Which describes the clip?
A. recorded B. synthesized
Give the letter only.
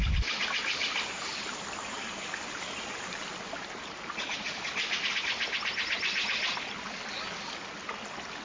A